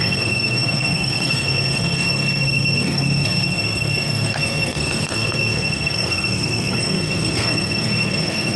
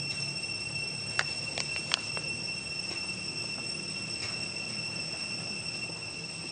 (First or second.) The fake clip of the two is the first